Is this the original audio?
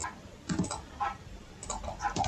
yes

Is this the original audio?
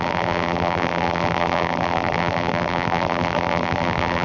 no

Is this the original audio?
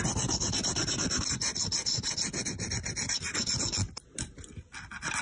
yes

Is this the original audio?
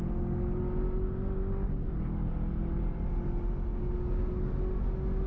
yes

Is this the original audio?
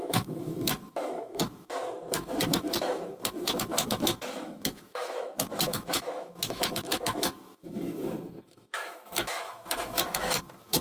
no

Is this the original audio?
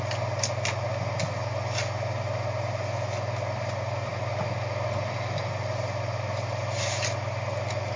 yes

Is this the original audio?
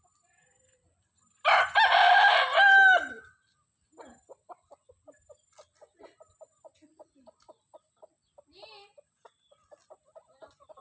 yes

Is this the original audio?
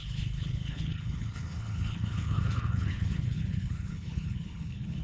no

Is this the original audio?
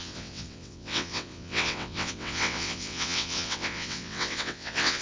no